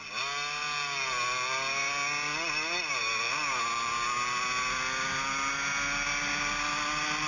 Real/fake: real